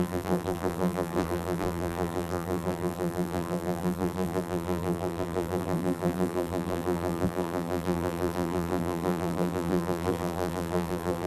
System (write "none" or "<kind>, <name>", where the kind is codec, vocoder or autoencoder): vocoder, BigVGAN v2